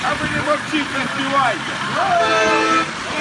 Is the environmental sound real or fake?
real